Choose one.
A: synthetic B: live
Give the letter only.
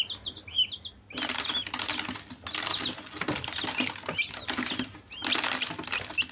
B